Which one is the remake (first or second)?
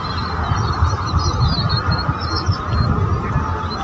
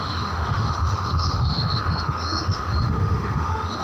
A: second